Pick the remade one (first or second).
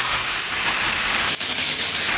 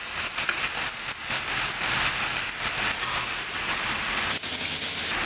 first